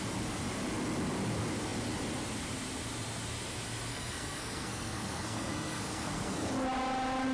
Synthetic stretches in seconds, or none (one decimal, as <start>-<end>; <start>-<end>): 3.9-6.5